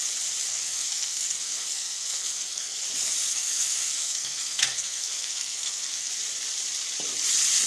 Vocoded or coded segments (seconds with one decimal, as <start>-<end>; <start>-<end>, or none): 0.5-2.8; 3.3-6.1